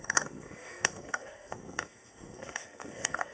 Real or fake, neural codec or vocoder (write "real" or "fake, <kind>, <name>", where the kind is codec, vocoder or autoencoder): fake, codec, SNAC